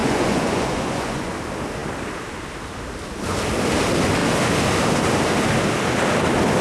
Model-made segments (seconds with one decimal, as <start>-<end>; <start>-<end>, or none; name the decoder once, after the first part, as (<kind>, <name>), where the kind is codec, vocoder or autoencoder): 0.0-1.3 (vocoder, Vocos)